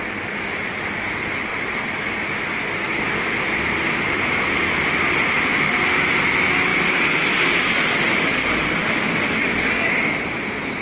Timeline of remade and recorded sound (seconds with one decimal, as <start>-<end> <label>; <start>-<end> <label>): 0.0-10.8 recorded